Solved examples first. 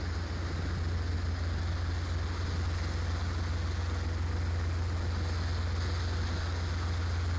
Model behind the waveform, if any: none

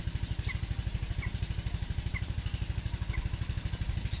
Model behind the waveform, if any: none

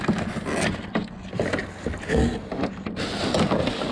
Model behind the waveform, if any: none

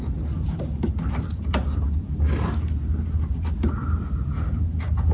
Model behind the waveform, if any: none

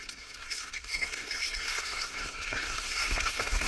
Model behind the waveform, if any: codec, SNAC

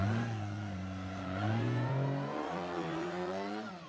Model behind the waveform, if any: vocoder, Vocos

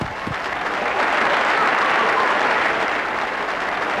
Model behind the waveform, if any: none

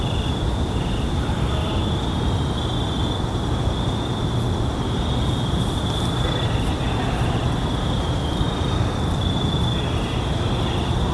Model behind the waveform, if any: none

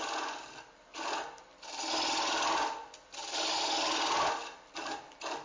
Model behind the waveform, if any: none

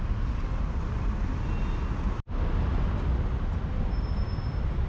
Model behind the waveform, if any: none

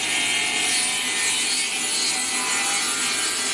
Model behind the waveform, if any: none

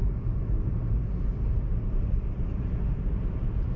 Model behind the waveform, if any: none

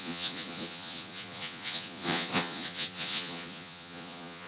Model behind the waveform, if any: vocoder, Vocos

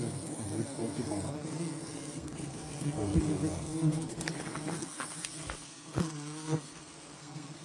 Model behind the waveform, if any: codec, SNAC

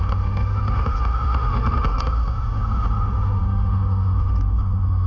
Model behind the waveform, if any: autoencoder, DAC-VAE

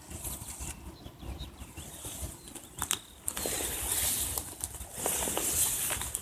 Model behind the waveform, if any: none